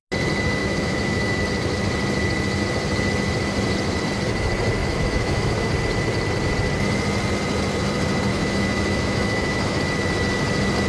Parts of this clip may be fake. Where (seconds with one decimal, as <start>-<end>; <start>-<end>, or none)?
0.6-1.4; 4.8-5.7; 8.3-9.8